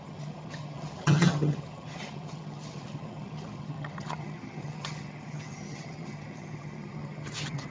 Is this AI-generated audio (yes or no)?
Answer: yes